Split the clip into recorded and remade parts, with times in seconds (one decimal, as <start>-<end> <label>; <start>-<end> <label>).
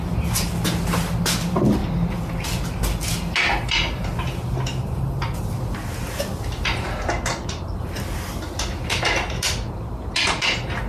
0.0-10.9 recorded